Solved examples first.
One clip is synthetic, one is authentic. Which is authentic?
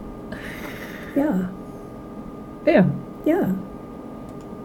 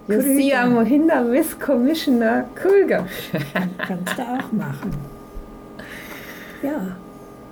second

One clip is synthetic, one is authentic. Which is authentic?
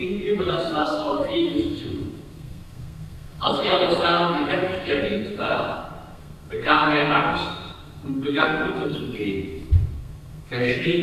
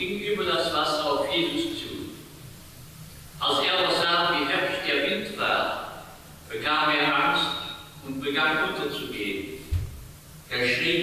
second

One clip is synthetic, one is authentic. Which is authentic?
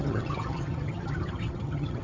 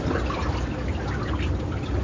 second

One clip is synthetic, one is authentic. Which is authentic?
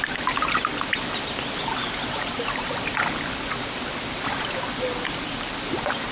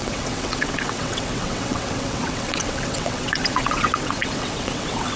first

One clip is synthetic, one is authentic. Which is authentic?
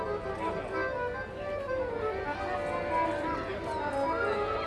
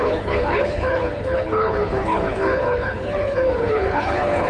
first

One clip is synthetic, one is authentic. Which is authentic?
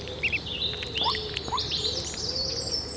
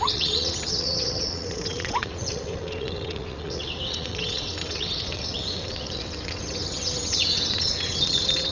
first